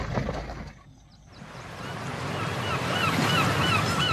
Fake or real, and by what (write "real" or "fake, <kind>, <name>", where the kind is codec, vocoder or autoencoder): real